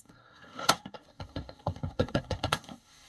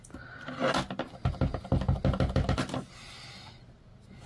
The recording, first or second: second